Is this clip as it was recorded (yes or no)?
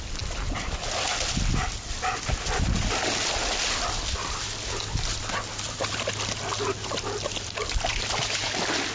yes